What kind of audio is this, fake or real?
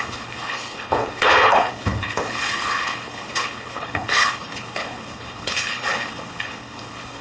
fake